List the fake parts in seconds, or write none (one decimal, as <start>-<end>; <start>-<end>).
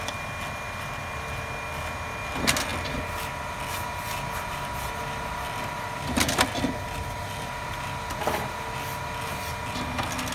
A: none